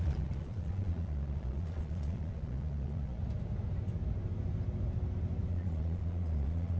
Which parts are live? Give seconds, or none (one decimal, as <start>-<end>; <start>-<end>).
3.2-5.5